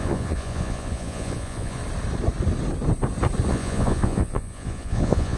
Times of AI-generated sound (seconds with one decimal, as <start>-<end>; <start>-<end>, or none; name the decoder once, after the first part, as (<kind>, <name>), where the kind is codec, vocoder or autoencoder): 0.0-1.8 (vocoder, Vocos); 3.5-5.4